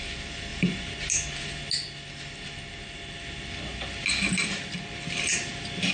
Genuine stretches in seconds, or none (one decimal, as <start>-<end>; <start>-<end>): 0.0-5.9